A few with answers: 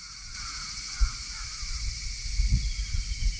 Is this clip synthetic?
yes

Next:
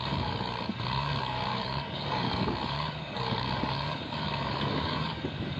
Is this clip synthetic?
yes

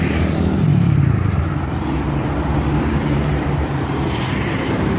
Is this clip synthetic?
yes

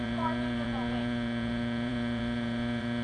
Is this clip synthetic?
yes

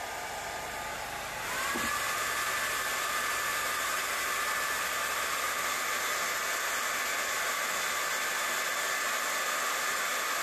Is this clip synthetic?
no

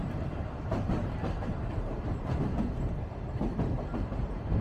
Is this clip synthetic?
yes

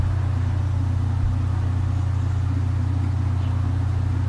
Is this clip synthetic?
no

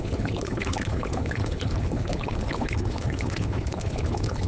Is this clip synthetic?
yes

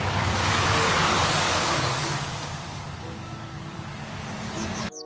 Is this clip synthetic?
yes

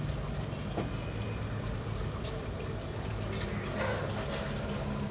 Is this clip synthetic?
no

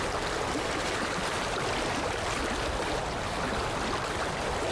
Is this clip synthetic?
no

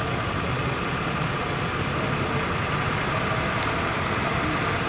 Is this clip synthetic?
no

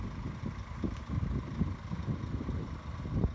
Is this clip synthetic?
no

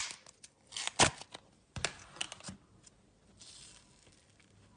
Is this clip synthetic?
no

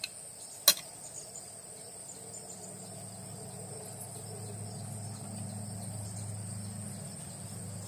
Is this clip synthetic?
no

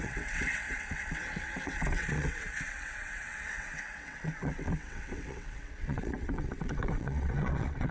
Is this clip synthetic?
yes